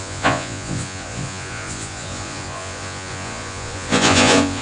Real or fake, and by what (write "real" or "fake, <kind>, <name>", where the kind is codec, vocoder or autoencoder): fake, vocoder, Vocos